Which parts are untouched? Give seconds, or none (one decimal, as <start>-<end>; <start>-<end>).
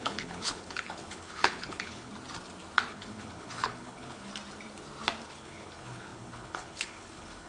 2.1-2.9; 4.3-5.3